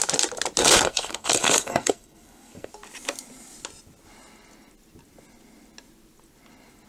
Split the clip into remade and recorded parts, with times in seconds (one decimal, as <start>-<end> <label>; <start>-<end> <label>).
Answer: 0.0-0.6 recorded; 0.6-2.7 remade; 2.7-6.9 recorded